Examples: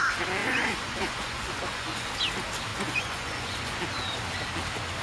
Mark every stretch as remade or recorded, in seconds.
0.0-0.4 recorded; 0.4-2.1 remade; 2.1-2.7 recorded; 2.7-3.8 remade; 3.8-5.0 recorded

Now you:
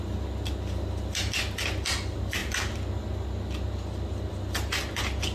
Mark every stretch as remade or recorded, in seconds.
0.0-5.3 recorded

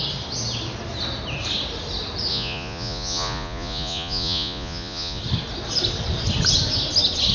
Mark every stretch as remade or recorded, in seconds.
0.0-2.3 recorded; 2.3-5.2 remade; 5.2-7.3 recorded

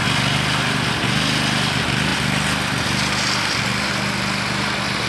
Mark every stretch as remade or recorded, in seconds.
0.0-5.1 recorded

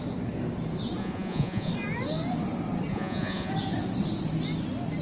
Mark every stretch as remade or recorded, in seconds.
0.0-1.0 recorded; 1.0-1.7 remade; 1.7-2.9 recorded; 2.9-3.5 remade; 3.5-5.0 recorded

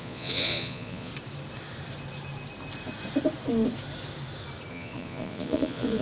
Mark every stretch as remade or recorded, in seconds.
0.0-1.1 remade; 1.1-4.7 recorded; 4.7-6.0 remade

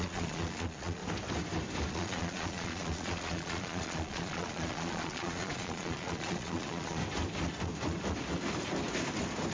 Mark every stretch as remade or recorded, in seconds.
0.0-1.0 remade; 1.0-1.9 recorded; 1.9-7.0 remade; 7.0-9.5 recorded

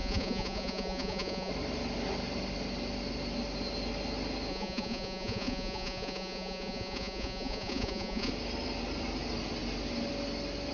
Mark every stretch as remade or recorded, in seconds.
0.0-1.5 remade; 1.5-4.5 recorded; 4.5-8.3 remade; 8.3-10.7 recorded